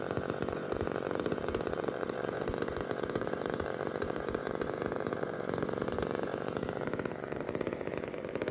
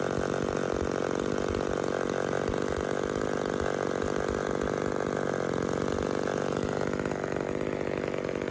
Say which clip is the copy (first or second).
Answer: first